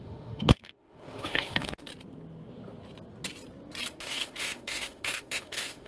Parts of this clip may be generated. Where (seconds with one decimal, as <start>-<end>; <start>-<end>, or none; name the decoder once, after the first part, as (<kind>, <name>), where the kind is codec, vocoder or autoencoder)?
0.0-1.9 (autoencoder, DAC-VAE); 4.0-5.9